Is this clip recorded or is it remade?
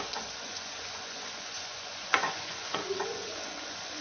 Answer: remade